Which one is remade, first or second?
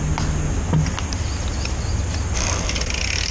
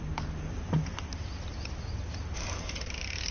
second